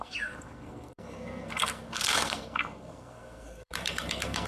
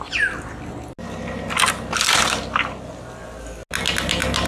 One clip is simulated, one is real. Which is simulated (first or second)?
first